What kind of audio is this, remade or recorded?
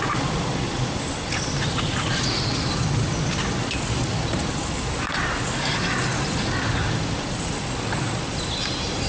recorded